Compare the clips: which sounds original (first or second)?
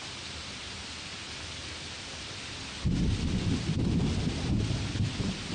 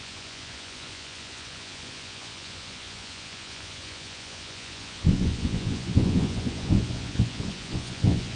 first